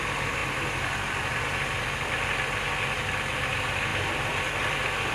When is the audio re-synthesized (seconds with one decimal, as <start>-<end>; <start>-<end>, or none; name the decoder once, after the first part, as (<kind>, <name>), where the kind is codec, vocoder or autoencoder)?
3.9-5.1 (vocoder, BigVGAN v2)